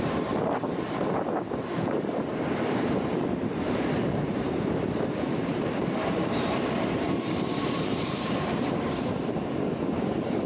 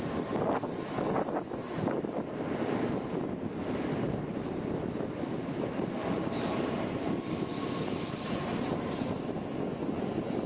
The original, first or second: second